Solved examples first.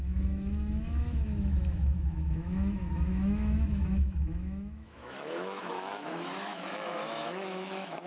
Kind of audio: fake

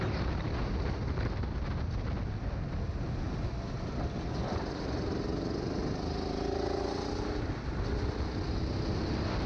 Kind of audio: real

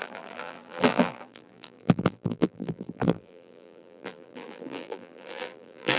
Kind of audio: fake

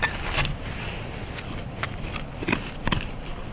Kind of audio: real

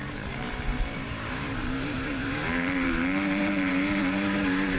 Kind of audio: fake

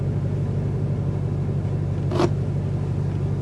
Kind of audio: real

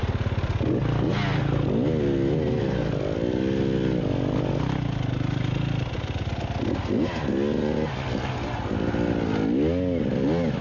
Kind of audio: real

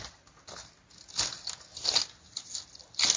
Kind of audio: real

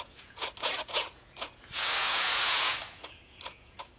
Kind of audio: fake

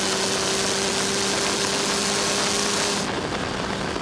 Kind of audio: real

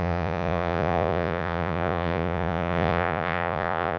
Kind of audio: fake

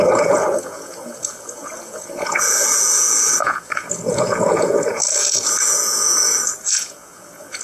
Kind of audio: fake